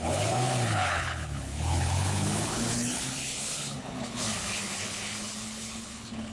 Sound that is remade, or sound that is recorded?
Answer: remade